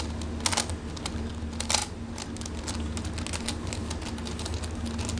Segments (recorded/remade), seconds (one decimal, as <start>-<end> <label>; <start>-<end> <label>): 0.0-5.2 recorded